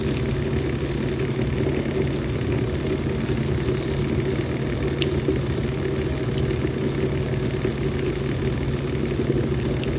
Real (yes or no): yes